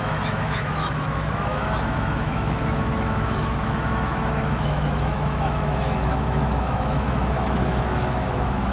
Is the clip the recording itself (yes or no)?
no